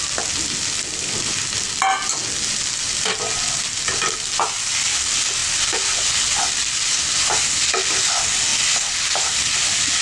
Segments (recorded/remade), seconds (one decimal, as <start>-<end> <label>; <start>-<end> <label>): 0.0-10.0 recorded